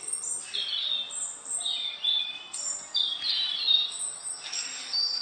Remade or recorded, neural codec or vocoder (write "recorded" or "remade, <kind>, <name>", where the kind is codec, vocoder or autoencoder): recorded